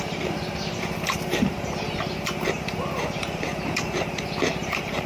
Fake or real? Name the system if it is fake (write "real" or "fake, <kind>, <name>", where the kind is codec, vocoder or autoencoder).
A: fake, vocoder, BigVGAN v2